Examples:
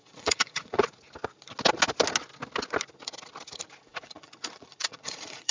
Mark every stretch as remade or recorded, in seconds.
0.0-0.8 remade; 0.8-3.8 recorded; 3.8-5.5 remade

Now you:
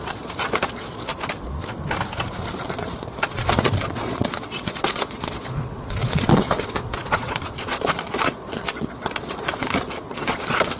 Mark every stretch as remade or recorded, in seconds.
0.0-1.1 remade; 1.1-2.6 recorded; 2.6-10.8 remade